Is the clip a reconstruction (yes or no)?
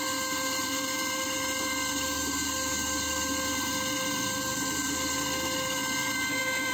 no